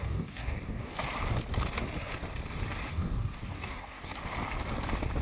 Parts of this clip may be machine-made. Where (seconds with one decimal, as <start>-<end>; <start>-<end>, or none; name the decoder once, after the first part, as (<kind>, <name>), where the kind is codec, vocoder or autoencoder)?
0.0-0.9 (codec, DAC); 2.9-4.1

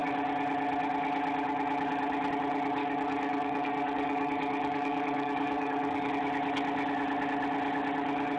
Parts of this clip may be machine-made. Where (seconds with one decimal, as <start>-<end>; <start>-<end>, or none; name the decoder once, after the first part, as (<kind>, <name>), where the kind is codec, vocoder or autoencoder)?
2.8-6.1 (codec, DAC)

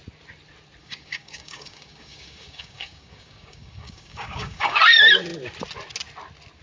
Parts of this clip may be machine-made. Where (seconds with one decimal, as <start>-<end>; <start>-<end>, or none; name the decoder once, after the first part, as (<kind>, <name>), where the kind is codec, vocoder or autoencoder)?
0.8-4.8 (codec, DAC)

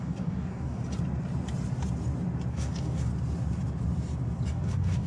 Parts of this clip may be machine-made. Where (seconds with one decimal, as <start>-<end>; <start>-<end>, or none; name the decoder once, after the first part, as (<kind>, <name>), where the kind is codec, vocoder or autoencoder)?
0.0-0.8 (codec, DAC); 2.5-3.1; 4.5-5.1

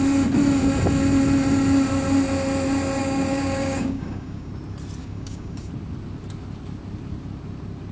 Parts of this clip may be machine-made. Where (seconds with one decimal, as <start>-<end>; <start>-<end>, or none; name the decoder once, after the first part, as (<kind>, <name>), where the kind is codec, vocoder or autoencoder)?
3.0-4.5 (codec, DAC); 5.0-5.7